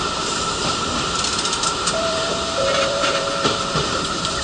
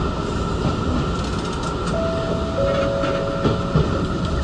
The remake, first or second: first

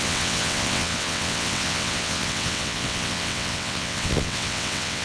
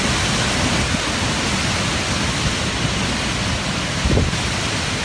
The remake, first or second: first